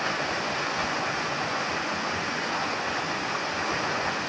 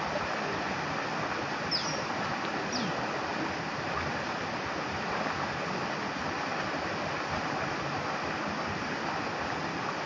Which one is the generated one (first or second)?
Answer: first